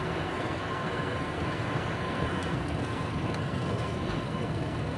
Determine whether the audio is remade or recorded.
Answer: remade